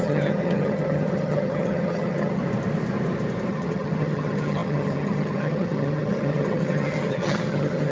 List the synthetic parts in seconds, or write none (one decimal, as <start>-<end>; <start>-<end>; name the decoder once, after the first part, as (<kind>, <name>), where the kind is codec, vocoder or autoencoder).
0.0-2.4 (vocoder, HiFi-GAN); 3.5-7.9